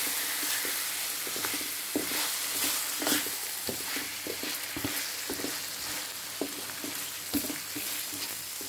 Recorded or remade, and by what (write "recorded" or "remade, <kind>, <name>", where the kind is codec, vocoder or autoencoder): recorded